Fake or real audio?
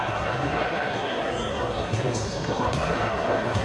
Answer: fake